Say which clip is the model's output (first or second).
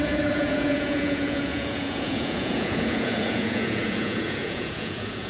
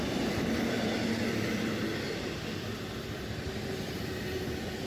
first